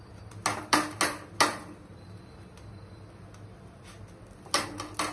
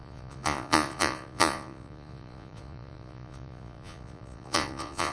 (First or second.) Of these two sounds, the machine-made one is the second